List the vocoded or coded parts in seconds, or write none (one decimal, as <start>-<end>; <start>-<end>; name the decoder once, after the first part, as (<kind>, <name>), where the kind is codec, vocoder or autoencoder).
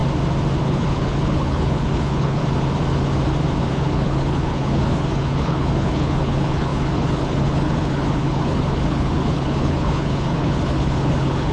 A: 0.6-2.4 (codec, HILCodec); 3.7-11.5